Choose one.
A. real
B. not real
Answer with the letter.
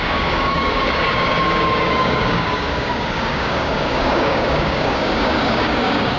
B